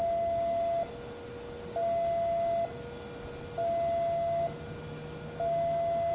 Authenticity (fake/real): real